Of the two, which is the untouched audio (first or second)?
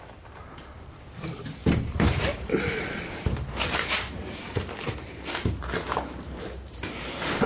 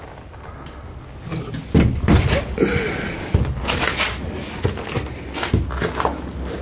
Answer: second